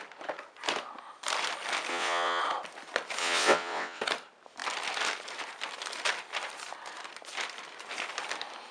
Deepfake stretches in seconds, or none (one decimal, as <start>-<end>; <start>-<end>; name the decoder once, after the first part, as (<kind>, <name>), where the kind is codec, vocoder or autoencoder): 1.9-2.4 (vocoder, WaveNeXt); 3.2-4.0